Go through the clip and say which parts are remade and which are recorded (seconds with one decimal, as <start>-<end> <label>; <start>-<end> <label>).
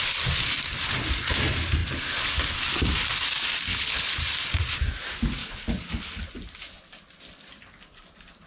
0.0-3.7 recorded; 3.7-4.2 remade; 4.2-5.4 recorded; 5.4-6.3 remade; 6.3-8.5 recorded